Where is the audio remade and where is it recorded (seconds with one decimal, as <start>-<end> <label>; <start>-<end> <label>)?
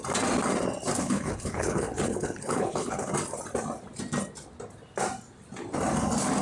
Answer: 0.0-1.0 recorded; 1.0-3.1 remade; 3.1-6.4 recorded